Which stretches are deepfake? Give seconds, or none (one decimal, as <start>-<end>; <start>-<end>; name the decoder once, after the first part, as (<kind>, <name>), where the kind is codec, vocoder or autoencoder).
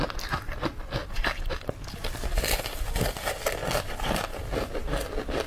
none